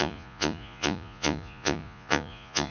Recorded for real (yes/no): no